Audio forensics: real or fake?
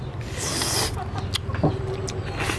real